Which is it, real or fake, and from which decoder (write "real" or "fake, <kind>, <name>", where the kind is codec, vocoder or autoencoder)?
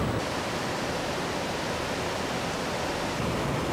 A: real